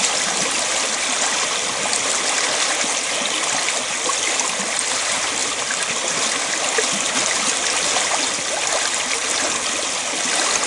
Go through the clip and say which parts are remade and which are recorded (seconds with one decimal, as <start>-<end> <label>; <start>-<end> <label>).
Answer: 0.0-10.7 recorded

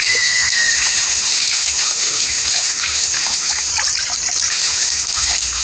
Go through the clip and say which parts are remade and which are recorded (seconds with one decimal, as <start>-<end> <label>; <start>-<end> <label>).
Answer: 0.0-3.7 remade; 3.7-4.5 recorded; 4.5-5.6 remade

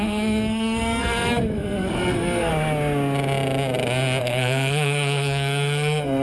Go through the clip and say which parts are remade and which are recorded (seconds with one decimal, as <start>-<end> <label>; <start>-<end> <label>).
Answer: 0.0-2.5 remade; 2.5-4.2 recorded; 4.2-6.2 remade

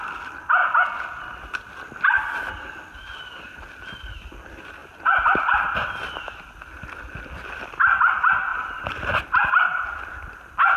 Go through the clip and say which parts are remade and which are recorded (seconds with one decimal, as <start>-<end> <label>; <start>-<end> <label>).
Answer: 0.0-4.8 recorded; 4.8-7.0 remade; 7.0-8.5 recorded; 8.5-9.5 remade; 9.5-10.8 recorded

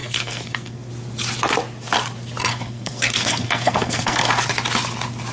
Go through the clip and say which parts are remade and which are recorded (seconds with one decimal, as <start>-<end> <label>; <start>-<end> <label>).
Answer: 0.0-0.9 remade; 0.9-2.5 recorded; 2.5-4.3 remade; 4.3-5.3 recorded